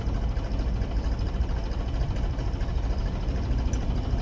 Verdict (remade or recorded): recorded